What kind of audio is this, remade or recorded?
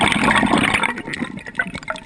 recorded